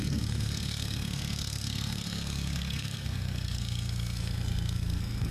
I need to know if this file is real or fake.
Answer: fake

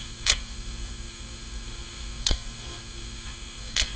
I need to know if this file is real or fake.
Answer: fake